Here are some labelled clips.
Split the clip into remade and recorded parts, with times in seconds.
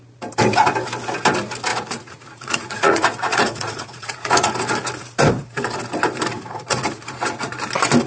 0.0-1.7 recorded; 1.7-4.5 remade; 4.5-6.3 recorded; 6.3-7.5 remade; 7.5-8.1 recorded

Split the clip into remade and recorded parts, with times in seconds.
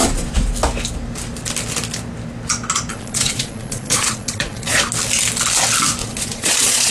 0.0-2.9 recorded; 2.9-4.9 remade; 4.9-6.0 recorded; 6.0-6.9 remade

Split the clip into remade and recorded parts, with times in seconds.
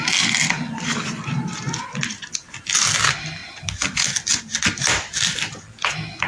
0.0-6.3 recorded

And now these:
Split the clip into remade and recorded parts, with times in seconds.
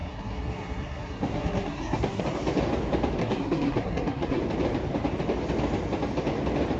0.0-2.2 remade; 2.2-3.2 recorded; 3.2-4.4 remade; 4.4-6.8 recorded